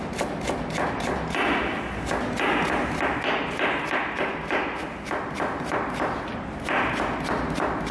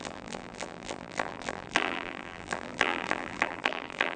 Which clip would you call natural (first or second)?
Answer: first